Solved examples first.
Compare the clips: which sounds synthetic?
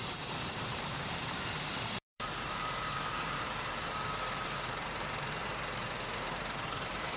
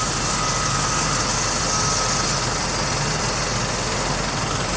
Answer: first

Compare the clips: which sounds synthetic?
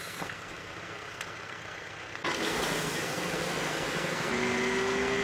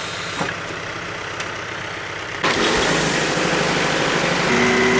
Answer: first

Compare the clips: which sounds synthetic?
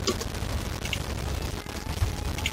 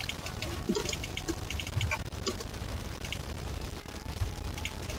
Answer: second